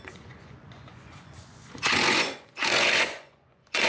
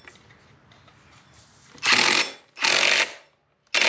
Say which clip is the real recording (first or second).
second